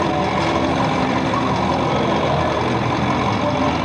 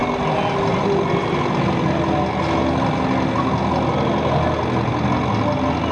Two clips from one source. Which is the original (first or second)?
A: second